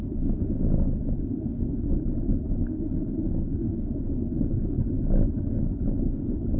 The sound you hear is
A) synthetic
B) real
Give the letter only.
A